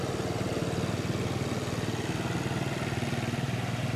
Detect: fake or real real